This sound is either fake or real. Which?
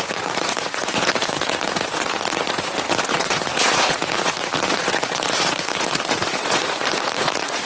fake